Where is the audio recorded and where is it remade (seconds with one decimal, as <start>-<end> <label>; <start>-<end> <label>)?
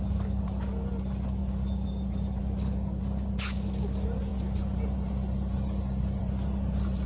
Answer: 0.0-7.1 recorded